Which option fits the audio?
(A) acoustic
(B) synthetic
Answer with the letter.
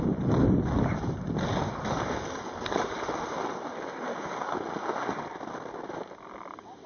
A